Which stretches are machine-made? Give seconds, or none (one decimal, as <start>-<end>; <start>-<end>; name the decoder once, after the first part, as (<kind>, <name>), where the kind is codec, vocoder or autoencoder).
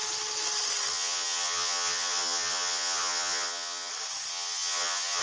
0.9-3.9 (vocoder, HiFi-GAN); 4.3-5.2